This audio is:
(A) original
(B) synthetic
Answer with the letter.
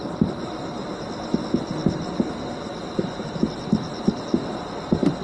A